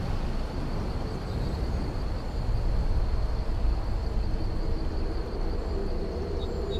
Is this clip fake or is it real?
real